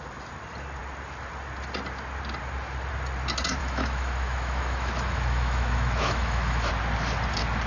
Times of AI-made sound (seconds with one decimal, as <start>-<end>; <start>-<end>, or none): 3.6-6.7